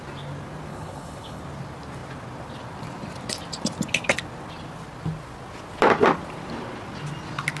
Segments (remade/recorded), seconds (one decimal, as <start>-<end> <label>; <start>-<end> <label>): 0.0-0.7 recorded; 0.7-1.4 remade; 1.4-7.6 recorded